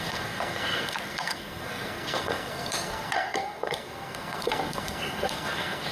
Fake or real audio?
fake